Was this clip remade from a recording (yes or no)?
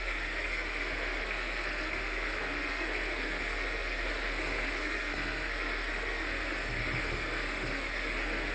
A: yes